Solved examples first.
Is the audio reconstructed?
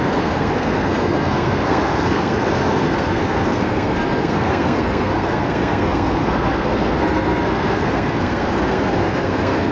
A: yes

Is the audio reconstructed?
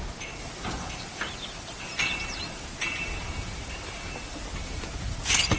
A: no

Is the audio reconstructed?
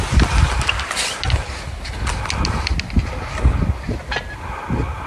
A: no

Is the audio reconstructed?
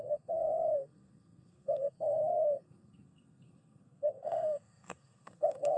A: yes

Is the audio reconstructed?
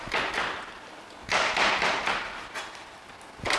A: no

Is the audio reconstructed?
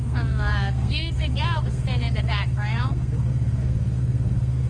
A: yes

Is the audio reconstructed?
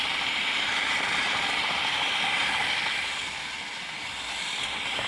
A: no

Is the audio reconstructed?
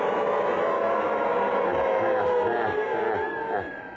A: no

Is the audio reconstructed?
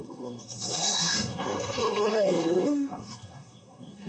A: yes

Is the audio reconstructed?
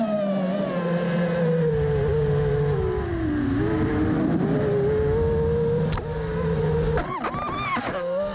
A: no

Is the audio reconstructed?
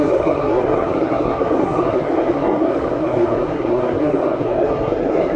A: yes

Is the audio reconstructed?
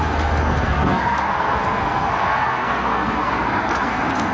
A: yes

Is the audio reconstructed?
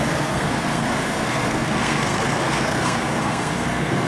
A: yes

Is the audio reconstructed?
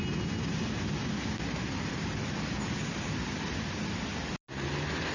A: no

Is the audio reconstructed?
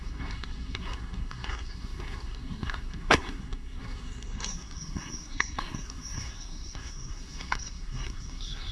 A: yes